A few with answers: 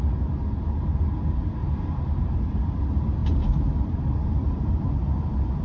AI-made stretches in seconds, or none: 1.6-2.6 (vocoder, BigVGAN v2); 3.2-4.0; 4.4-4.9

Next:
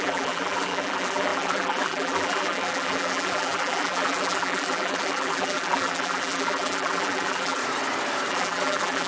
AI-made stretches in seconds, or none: 0.0-7.6 (vocoder, BigVGAN v2); 8.3-9.1

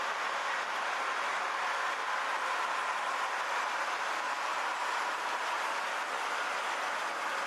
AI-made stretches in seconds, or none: 4.5-6.0 (vocoder, BigVGAN v2)

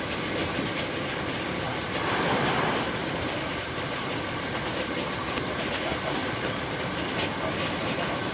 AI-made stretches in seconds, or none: 3.0-4.6 (vocoder, BigVGAN v2); 6.2-7.0

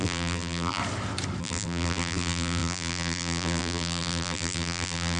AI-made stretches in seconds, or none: 0.0-0.8 (vocoder, BigVGAN v2); 1.4-5.2

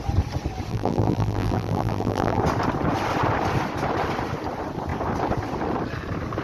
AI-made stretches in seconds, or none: 0.7-2.4 (vocoder, BigVGAN v2)

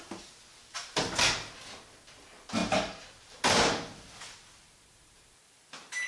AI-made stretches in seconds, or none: 2.6-3.4 (vocoder, BigVGAN v2)

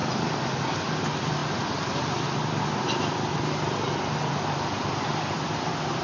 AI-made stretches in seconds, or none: 0.6-6.0 (vocoder, BigVGAN v2)